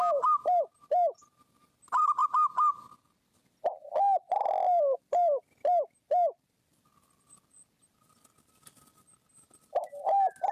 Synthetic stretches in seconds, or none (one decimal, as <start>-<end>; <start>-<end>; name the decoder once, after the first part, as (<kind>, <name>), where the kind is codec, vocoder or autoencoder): none